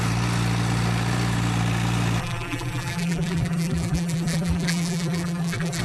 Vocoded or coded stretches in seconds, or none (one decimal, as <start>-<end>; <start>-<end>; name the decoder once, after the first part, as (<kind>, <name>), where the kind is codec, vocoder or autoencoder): 2.2-5.8 (vocoder, BigVGAN v2)

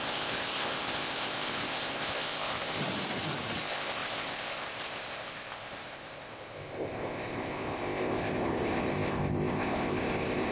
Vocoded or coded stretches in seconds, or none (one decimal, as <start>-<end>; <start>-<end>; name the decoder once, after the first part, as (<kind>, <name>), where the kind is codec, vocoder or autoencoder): 0.0-2.8 (codec, ZipCodec); 3.6-10.5